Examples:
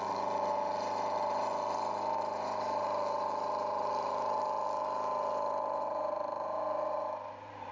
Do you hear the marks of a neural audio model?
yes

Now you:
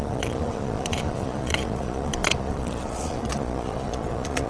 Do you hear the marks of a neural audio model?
yes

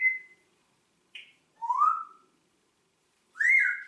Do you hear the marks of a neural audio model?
yes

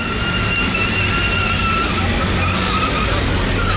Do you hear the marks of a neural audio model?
no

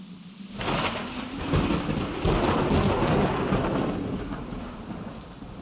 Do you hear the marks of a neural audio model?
no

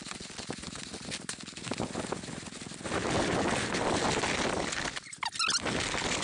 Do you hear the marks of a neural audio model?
no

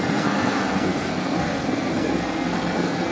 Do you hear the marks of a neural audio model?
yes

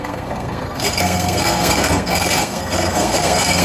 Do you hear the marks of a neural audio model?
yes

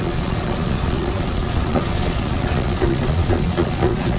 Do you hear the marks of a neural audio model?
yes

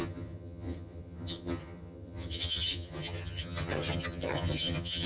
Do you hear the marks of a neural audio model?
yes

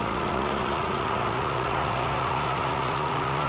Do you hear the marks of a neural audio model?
yes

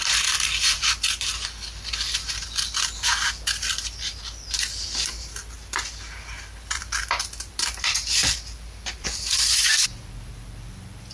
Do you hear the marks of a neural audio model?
yes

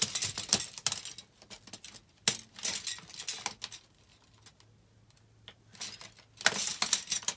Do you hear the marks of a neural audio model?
no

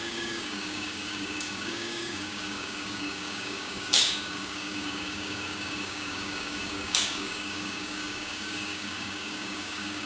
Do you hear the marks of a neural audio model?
yes